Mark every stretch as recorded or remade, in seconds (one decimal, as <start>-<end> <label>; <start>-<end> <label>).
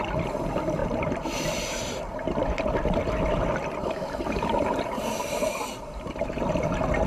0.0-0.8 recorded; 0.8-2.4 remade; 2.4-3.8 recorded; 3.8-5.9 remade; 5.9-7.1 recorded